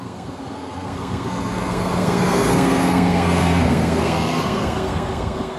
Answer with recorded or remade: remade